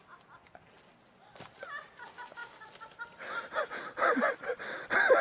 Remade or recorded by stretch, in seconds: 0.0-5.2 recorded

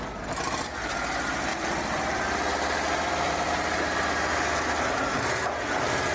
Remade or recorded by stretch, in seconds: 0.0-1.5 recorded; 1.5-3.5 remade; 3.5-6.1 recorded

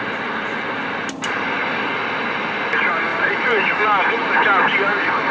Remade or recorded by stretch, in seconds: 0.0-3.1 recorded; 3.1-3.8 remade; 3.8-5.3 recorded

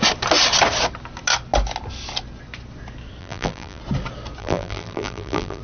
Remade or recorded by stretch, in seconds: 0.0-3.2 recorded; 3.2-3.8 remade; 3.8-4.4 recorded; 4.4-5.6 remade